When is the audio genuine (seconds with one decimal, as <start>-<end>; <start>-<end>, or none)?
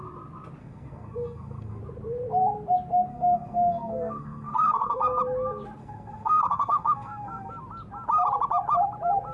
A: 0.0-0.6; 1.8-3.1; 5.2-5.8; 7.5-9.3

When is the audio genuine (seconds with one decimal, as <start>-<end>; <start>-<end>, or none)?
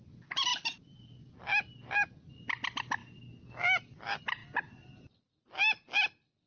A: 0.0-6.5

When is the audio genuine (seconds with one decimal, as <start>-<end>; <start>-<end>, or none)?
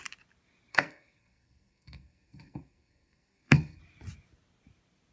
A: 0.0-0.7; 3.8-5.1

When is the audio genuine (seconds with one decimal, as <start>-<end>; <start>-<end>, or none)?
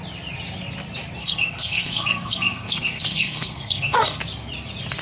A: 0.0-1.2; 4.2-5.0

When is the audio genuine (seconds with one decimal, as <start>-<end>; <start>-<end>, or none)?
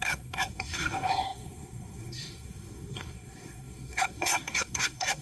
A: none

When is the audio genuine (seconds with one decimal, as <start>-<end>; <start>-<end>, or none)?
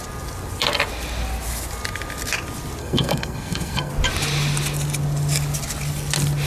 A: 0.0-2.8; 3.9-6.5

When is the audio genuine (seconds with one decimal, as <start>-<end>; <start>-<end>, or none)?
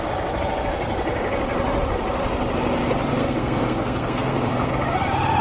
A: 0.0-3.2; 4.7-5.4